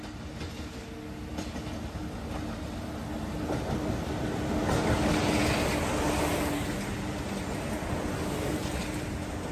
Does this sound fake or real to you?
real